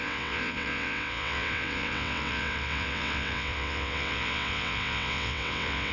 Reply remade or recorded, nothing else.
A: remade